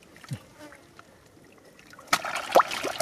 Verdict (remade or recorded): recorded